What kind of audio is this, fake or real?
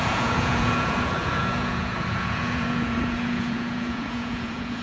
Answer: fake